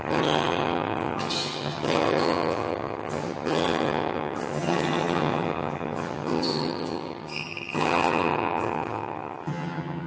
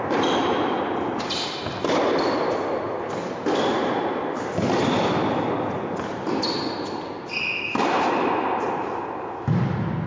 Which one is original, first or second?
second